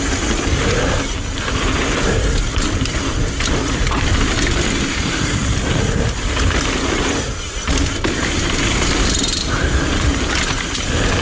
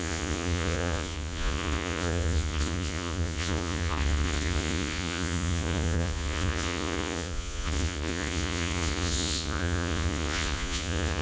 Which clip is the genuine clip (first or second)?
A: first